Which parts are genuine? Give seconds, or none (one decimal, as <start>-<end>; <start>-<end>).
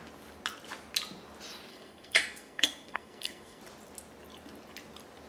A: 0.0-1.7; 3.6-5.3